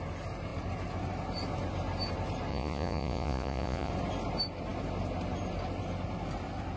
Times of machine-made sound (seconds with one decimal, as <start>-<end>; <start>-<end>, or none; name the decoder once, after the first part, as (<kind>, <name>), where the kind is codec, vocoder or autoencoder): 2.5-3.9 (vocoder, Vocos)